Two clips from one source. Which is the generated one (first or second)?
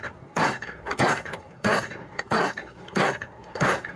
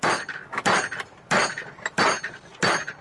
first